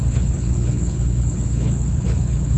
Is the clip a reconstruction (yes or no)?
yes